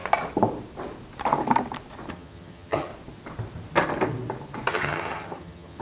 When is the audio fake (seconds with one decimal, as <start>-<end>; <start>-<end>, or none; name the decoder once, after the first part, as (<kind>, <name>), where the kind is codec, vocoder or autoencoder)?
2.1-2.9 (vocoder, HiFi-GAN); 4.7-5.8